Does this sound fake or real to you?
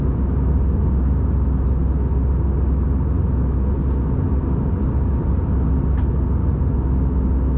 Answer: real